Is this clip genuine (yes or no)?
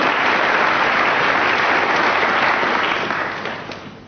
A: yes